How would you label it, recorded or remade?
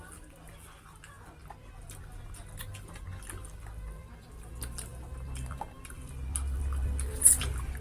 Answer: recorded